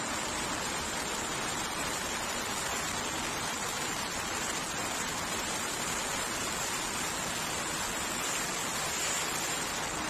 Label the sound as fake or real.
real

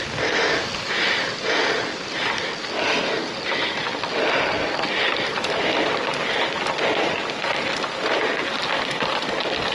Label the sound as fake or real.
real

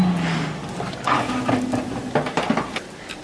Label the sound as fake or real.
real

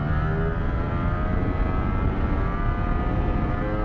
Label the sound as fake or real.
real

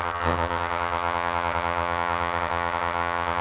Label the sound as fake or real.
fake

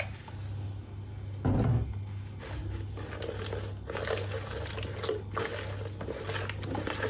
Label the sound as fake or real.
real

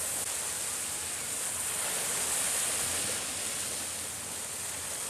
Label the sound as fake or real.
real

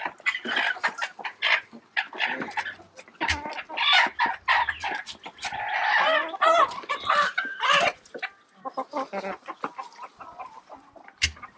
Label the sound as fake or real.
real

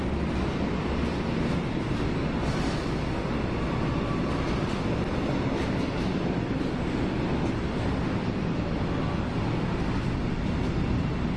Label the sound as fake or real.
real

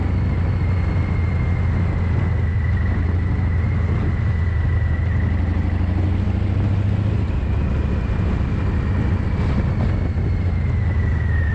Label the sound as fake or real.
real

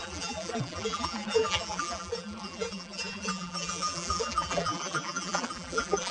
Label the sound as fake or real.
fake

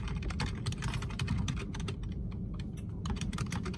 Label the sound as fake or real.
fake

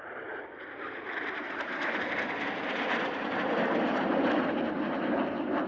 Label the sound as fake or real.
real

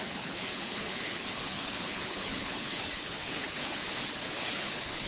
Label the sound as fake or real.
fake